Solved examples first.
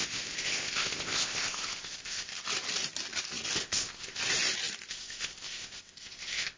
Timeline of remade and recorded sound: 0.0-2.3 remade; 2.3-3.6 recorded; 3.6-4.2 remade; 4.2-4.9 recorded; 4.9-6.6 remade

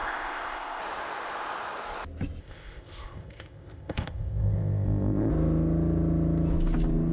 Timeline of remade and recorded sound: 0.0-0.8 remade; 0.8-2.4 recorded; 2.4-5.3 remade; 5.3-7.1 recorded

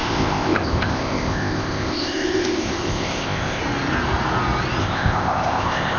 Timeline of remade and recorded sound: 0.0-3.6 remade; 3.6-4.8 recorded; 4.8-6.0 remade